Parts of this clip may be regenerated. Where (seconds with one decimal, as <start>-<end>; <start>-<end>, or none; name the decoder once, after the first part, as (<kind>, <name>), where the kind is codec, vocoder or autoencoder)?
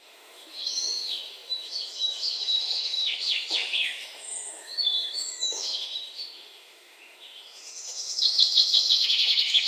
0.0-9.7 (autoencoder, DAC-VAE)